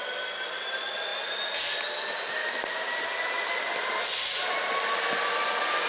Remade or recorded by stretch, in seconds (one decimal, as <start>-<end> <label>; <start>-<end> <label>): 0.0-5.9 recorded